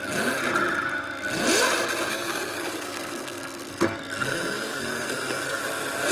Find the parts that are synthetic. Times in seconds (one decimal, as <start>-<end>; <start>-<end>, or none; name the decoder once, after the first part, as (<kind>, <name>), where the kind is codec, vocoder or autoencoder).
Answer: 2.1-5.6 (codec, SNAC)